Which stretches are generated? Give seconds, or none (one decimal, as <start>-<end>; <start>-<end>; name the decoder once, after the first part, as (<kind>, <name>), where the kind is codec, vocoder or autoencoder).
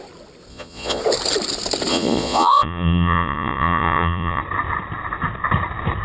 0.5-1.0 (vocoder, Vocos); 1.9-4.4